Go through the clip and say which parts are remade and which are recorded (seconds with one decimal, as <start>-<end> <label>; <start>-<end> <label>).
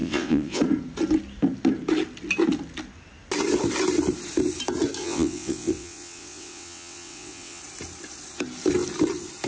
0.0-0.6 remade; 0.6-5.0 recorded; 5.0-7.6 remade; 7.6-9.5 recorded